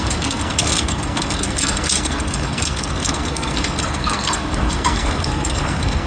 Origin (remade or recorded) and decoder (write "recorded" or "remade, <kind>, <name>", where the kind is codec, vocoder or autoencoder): remade, codec, SNAC